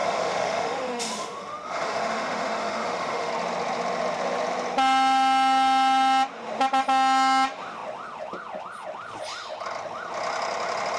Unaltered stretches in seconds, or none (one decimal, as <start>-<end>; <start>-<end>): 3.3-11.0